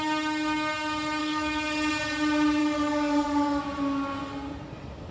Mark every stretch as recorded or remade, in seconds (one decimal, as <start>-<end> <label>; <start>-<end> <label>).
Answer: 0.0-1.2 recorded; 1.2-1.9 remade; 1.9-2.6 recorded; 2.6-3.6 remade; 3.6-5.1 recorded